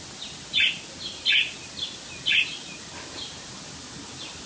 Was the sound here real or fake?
real